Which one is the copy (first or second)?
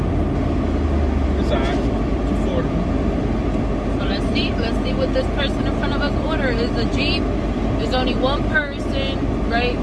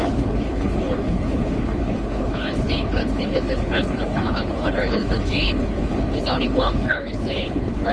second